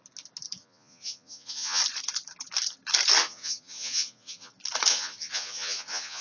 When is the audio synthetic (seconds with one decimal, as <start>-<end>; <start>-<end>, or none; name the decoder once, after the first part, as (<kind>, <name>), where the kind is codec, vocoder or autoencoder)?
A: 0.6-1.8 (vocoder, Vocos); 3.2-4.5; 4.9-6.2